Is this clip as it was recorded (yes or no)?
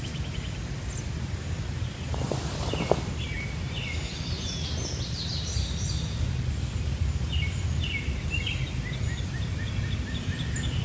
yes